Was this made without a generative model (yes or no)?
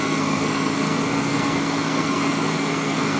no